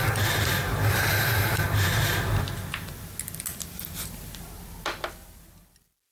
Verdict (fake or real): real